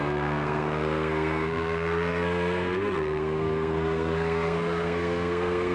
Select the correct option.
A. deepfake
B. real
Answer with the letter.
A